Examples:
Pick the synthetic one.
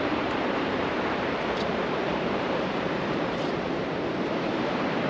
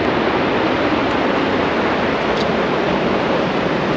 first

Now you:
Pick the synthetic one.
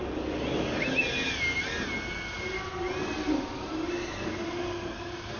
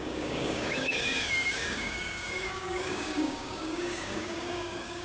second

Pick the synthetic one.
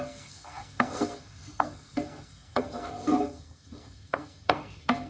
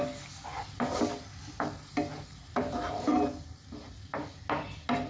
first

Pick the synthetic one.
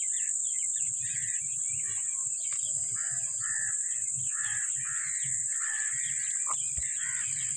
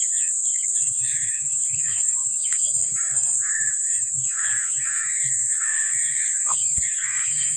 second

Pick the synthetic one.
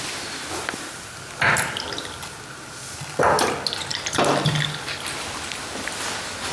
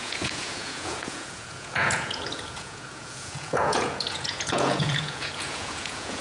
second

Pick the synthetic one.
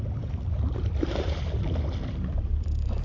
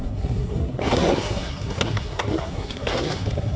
second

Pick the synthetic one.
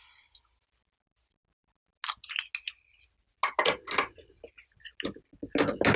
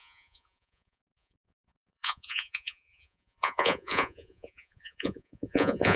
second